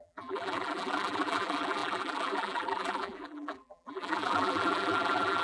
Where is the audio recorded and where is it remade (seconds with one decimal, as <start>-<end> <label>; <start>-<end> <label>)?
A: 0.0-5.4 remade